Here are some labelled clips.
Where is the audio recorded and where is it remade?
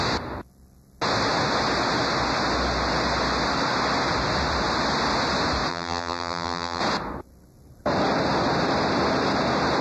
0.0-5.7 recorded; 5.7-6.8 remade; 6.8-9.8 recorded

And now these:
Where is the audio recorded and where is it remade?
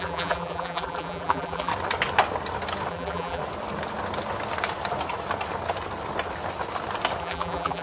0.0-1.7 remade; 1.7-2.9 recorded; 2.9-3.4 remade; 3.4-7.2 recorded; 7.2-7.8 remade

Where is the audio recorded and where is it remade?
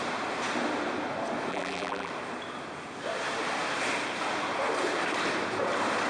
0.0-1.5 recorded; 1.5-2.1 remade; 2.1-6.1 recorded